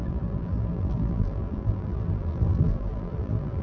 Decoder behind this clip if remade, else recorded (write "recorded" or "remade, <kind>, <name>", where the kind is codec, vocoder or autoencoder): remade, vocoder, BigVGAN v2